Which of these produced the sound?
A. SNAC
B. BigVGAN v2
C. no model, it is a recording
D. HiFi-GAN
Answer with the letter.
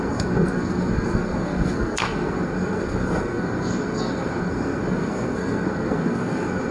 A